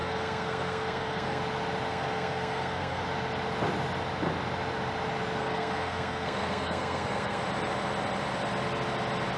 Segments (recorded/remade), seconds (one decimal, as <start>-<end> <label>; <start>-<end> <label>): 0.0-1.4 remade; 1.4-1.9 recorded; 1.9-3.0 remade; 3.0-5.4 recorded; 5.4-7.4 remade; 7.4-9.4 recorded